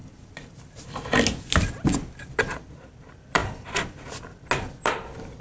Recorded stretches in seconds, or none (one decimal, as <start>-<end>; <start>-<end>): 0.0-2.4; 3.4-4.7